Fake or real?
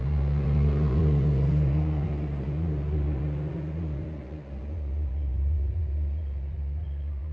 fake